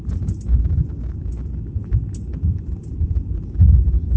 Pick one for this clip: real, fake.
real